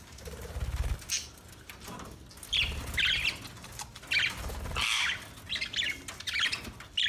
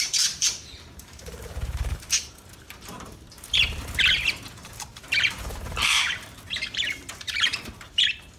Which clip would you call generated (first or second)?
second